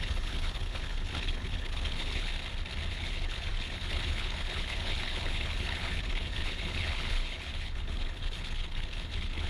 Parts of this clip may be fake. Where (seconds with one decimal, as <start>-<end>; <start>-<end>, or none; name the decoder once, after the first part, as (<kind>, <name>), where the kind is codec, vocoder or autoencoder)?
0.0-2.3 (codec, HILCodec); 2.9-9.5